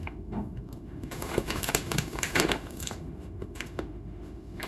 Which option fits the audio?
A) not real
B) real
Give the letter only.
A